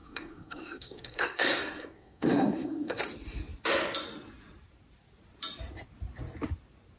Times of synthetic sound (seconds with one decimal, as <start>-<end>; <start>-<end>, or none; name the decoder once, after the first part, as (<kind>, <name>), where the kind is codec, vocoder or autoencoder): 0.0-3.0 (codec, SNAC)

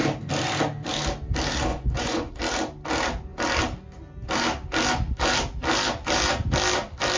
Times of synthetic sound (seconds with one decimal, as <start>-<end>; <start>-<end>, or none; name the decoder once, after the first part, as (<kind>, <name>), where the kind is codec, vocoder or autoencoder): 1.7-2.3 (vocoder, Vocos)

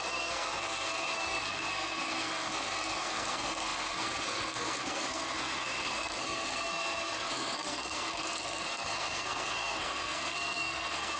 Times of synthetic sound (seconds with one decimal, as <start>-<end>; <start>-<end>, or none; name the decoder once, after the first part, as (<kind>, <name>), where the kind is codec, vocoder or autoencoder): 0.0-11.2 (codec, SNAC)

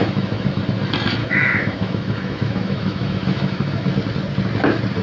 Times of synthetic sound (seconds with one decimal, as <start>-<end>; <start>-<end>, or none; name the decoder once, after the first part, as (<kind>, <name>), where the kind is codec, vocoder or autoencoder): 0.0-0.6 (autoencoder, DAC-VAE); 1.2-3.9

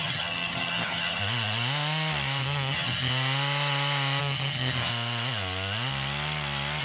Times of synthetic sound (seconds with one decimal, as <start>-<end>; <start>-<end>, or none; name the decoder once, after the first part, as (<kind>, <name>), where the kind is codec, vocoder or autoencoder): 0.0-1.2 (vocoder, HiFi-GAN); 2.4-3.1; 4.2-4.9